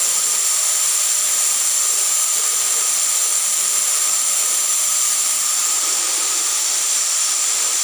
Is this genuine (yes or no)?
no